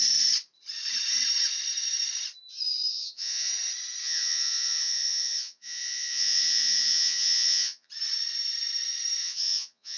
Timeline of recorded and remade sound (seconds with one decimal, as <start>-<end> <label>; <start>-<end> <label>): 0.0-2.9 recorded; 2.9-3.5 remade; 3.5-4.0 recorded; 4.0-7.9 remade; 7.9-9.2 recorded; 9.2-10.0 remade